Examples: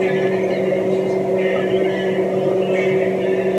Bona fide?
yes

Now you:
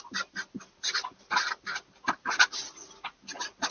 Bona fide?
yes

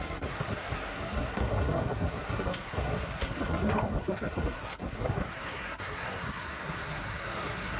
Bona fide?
no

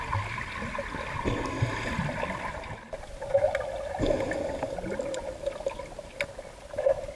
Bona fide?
yes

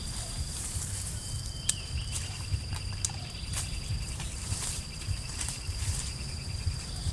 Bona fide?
no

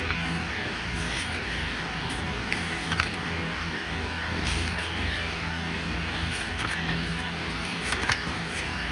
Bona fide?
no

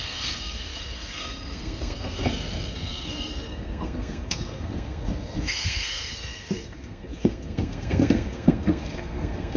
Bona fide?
no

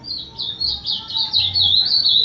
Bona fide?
yes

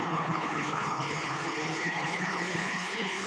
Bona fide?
no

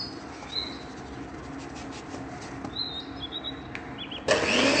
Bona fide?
yes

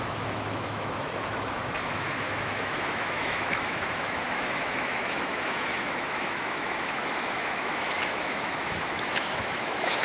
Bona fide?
no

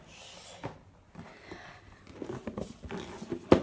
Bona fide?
yes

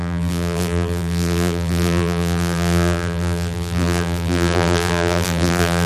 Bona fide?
no